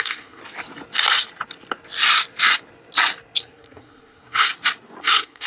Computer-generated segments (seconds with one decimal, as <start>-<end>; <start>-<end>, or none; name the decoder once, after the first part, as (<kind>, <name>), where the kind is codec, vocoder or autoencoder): 0.0-0.4 (codec, SNAC); 3.4-4.5; 5.0-5.5